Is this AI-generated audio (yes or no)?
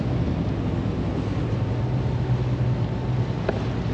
no